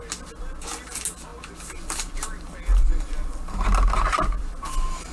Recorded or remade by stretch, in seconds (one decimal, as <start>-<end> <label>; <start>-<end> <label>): 0.0-5.1 recorded